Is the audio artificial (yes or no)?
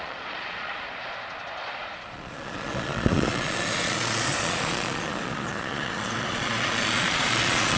yes